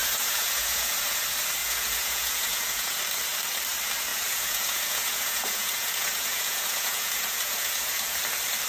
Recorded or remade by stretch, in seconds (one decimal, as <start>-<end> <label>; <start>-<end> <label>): 0.0-1.2 remade; 1.2-1.6 recorded; 1.6-3.0 remade; 3.0-4.1 recorded; 4.1-8.2 remade; 8.2-8.7 recorded